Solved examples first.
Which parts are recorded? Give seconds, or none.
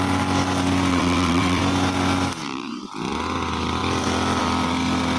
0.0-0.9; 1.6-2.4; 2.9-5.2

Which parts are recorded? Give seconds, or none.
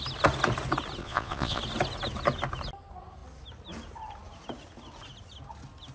0.0-1.0; 1.6-5.9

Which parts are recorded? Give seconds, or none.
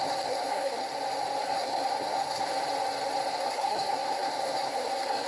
0.9-1.4; 2.5-3.3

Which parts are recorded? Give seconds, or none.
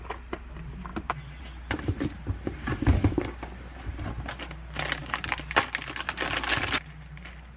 0.0-7.6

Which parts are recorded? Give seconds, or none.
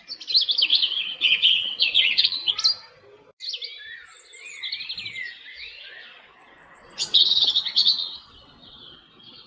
0.0-0.7; 2.5-5.5